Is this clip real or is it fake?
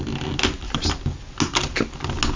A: real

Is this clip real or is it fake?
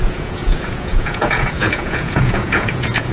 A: fake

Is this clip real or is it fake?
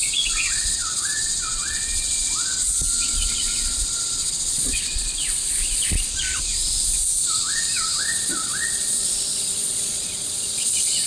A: fake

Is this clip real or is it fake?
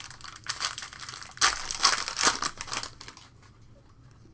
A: real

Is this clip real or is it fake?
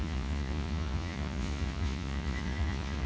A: fake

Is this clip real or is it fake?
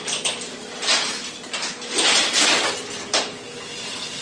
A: real